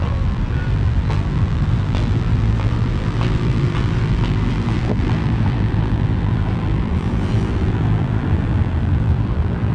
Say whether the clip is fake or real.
fake